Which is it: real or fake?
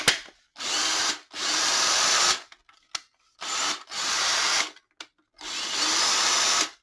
real